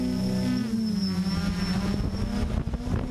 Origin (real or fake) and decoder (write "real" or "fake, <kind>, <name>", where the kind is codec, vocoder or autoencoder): real